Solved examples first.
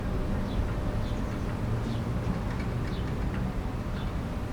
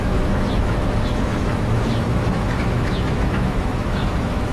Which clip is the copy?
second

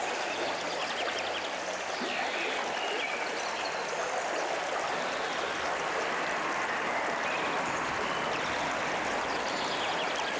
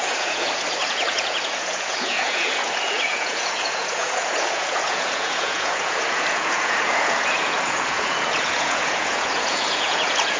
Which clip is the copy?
second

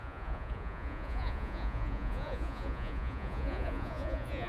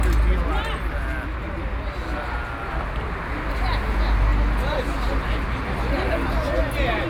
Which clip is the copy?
first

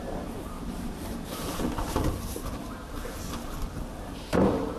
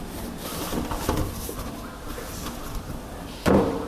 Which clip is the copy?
first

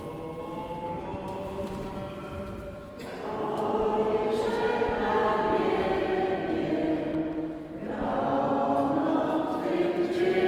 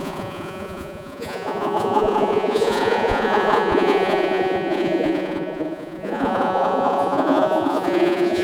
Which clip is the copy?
second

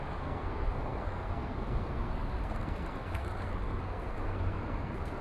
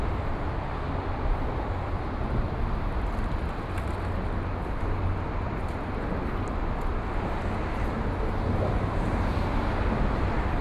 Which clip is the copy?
first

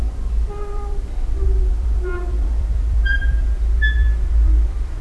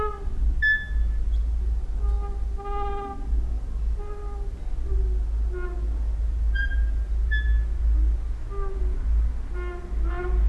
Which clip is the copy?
first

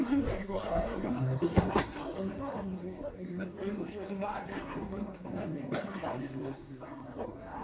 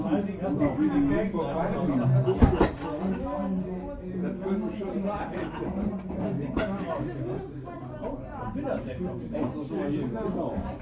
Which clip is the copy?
first